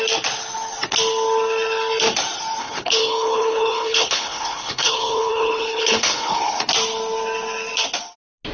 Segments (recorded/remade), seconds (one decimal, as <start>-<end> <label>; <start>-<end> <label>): 0.0-2.6 recorded; 2.6-6.6 remade; 6.6-8.5 recorded